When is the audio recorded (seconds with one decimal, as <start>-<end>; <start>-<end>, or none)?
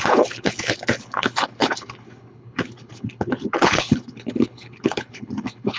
none